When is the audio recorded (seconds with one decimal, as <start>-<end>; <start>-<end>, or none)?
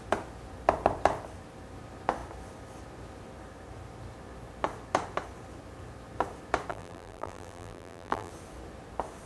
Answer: 0.0-6.7; 8.3-9.3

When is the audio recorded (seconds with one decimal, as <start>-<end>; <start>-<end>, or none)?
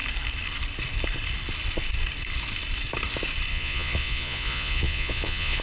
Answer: 0.0-3.5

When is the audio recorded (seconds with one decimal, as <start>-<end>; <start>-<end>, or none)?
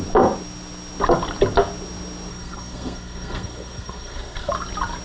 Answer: 0.0-2.3; 4.5-5.0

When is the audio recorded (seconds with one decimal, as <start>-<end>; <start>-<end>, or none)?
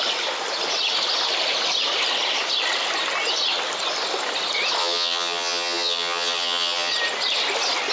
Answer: 0.0-4.8; 6.9-7.9